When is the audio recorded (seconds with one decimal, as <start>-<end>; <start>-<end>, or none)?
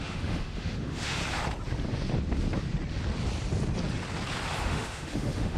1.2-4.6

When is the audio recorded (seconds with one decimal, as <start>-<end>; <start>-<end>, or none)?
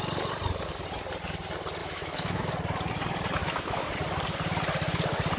0.0-1.8; 2.5-3.4; 3.9-5.4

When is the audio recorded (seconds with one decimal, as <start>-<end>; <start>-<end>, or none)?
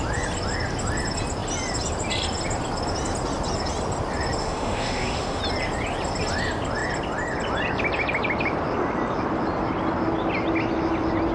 0.0-4.4; 5.4-11.3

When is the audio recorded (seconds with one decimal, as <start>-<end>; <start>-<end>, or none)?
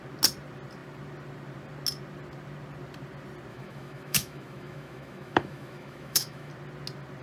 0.0-3.5; 6.5-7.2